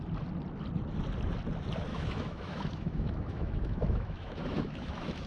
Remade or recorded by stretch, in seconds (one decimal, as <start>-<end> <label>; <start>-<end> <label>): 0.0-1.9 recorded; 1.9-5.3 remade